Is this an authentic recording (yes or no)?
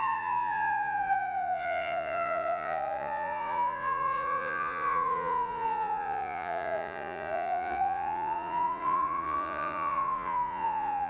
no